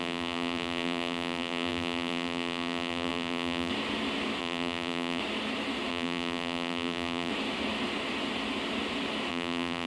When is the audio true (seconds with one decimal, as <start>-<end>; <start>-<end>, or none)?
3.7-4.4; 5.2-5.9; 7.3-9.3